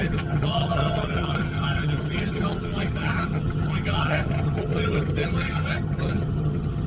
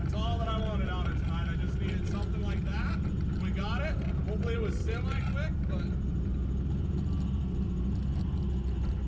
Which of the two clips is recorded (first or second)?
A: second